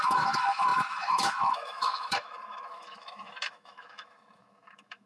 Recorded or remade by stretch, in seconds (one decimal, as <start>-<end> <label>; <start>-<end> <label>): 0.0-5.1 remade